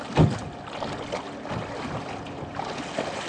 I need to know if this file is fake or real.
real